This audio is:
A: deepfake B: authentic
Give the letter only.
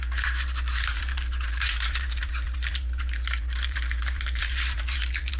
A